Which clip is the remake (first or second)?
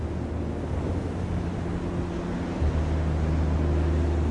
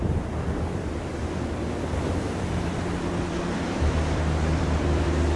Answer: second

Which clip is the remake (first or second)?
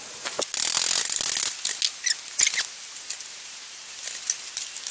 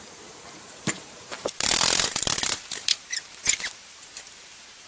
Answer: second